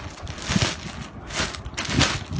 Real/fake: real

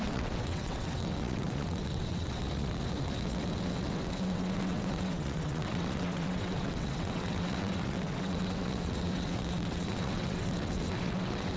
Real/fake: fake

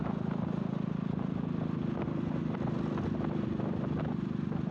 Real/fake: real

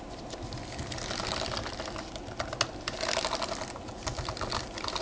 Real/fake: real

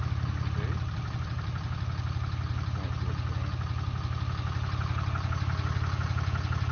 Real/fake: real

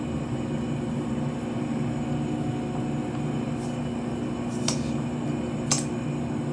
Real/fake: real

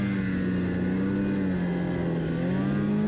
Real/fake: real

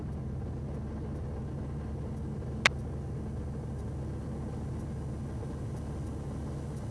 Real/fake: real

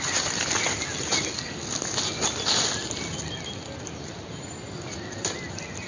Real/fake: real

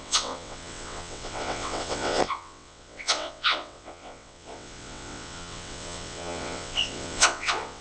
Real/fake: fake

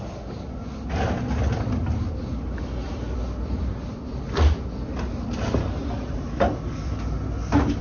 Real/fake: real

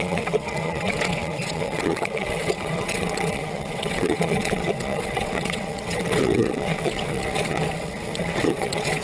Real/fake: fake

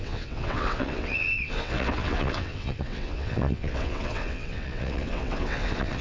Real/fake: fake